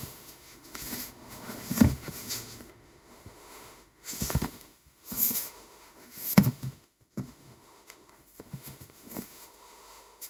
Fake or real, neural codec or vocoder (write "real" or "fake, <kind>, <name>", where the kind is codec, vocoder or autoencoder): fake, autoencoder, DAC-VAE